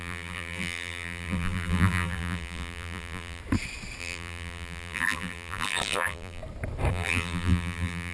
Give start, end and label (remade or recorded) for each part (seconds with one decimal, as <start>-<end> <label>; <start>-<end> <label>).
0.0-3.4 remade; 3.4-4.0 recorded; 4.0-6.4 remade; 6.4-6.9 recorded; 6.9-8.1 remade